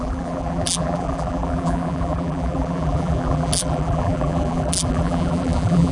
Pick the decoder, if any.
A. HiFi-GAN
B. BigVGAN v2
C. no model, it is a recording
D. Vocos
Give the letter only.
B